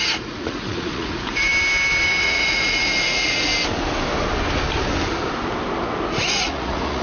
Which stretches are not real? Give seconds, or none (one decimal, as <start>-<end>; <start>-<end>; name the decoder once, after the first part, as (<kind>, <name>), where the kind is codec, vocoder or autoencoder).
0.0-1.5 (vocoder, Vocos); 2.2-3.5; 6.3-7.0